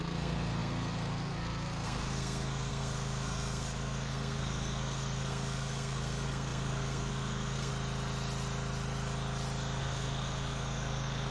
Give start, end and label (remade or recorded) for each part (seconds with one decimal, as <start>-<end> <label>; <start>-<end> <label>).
0.0-7.7 remade; 7.7-9.8 recorded; 9.8-11.3 remade